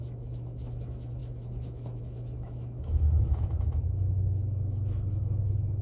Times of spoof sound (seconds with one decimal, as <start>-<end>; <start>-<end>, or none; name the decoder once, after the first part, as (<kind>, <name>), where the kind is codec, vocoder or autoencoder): 0.0-5.8 (autoencoder, DAC-VAE)